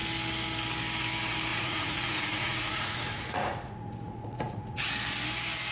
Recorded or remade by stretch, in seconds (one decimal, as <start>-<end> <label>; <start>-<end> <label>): 0.0-1.5 recorded; 1.5-4.9 remade; 4.9-5.7 recorded